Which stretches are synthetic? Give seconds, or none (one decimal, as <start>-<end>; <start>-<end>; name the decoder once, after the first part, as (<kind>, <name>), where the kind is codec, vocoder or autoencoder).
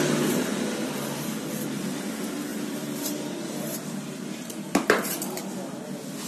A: 2.5-5.4 (vocoder, BigVGAN v2)